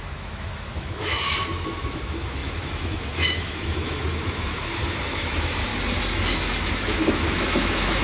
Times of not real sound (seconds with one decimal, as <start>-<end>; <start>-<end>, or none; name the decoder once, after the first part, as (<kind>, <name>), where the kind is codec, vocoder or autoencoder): 0.0-5.7 (autoencoder, DAC-VAE); 6.7-8.0